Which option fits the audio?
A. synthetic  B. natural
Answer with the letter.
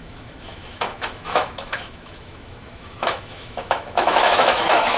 A